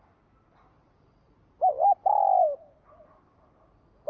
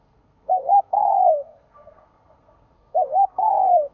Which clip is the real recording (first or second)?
first